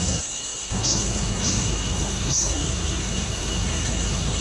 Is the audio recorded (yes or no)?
no